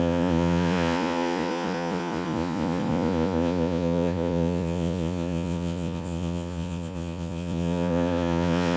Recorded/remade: remade